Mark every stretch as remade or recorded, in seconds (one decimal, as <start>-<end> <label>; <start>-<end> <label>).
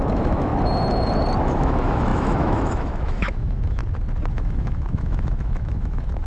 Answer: 0.0-0.5 remade; 0.5-1.4 recorded; 1.4-3.8 remade; 3.8-4.3 recorded; 4.3-6.3 remade